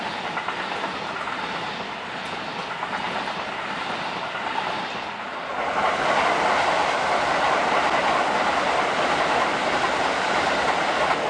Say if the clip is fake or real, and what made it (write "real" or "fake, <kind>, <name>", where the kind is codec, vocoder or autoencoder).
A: real